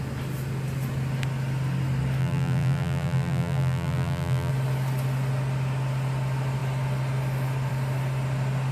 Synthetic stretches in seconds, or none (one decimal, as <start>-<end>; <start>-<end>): 2.2-4.5